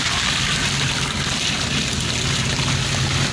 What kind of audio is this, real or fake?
real